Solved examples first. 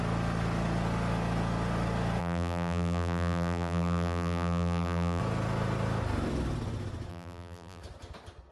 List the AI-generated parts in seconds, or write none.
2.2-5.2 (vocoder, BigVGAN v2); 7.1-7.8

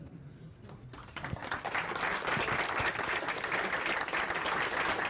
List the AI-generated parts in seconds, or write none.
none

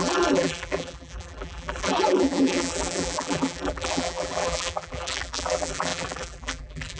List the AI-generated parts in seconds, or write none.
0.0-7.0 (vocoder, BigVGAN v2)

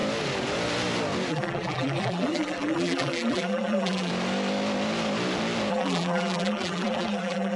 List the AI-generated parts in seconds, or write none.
1.3-4.1 (vocoder, BigVGAN v2); 5.7-7.6

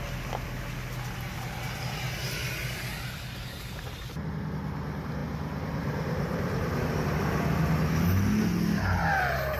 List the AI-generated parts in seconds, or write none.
5.2-7.1 (vocoder, BigVGAN v2)

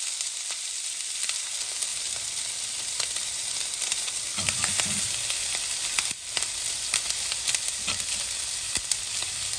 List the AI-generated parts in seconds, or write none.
1.9-5.0 (vocoder, BigVGAN v2)